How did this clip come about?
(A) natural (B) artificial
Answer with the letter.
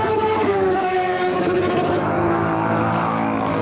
B